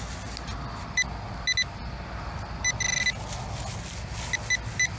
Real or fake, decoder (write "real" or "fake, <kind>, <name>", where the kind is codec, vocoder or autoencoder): real